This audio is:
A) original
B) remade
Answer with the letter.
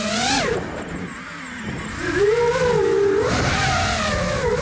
A